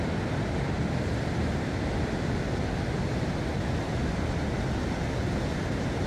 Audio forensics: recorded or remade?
recorded